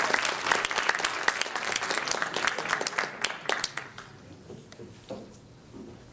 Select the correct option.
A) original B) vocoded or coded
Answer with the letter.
A